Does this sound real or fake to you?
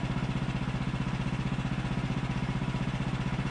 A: real